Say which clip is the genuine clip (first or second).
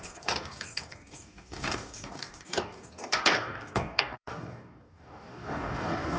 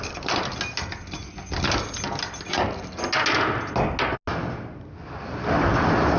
second